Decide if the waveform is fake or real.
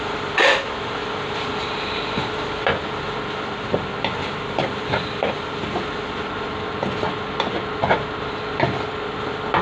real